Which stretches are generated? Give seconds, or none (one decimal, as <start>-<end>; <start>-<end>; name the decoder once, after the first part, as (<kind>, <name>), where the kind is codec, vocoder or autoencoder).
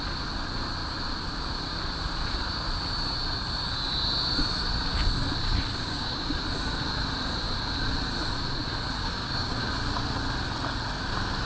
5.7-6.4 (codec, DAC); 9.0-9.7